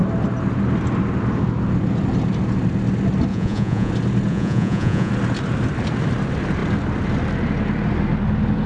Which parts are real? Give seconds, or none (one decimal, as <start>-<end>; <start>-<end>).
0.0-3.3; 3.9-4.3; 5.1-8.7